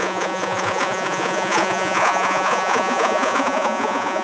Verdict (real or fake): fake